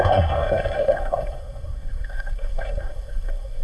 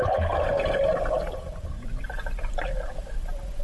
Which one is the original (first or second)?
second